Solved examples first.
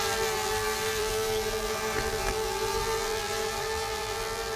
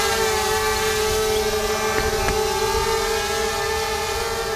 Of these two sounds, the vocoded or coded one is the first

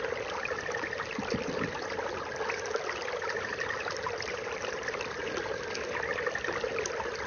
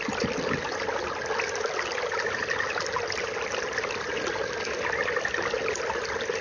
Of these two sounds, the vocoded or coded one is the first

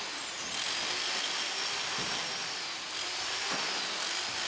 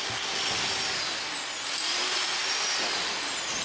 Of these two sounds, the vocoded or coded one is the first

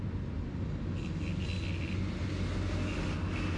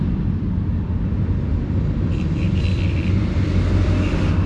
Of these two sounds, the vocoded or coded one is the second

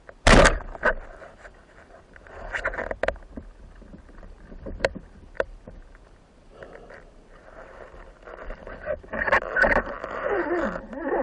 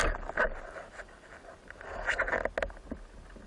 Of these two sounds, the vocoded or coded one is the first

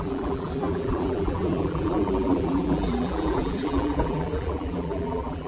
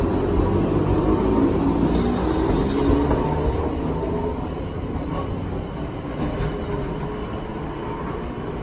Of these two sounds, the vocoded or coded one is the first